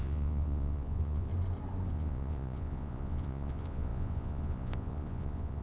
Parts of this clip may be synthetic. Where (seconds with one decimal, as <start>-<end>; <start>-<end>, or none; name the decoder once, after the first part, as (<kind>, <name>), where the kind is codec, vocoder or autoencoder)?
0.0-1.3 (vocoder, Vocos); 1.9-5.6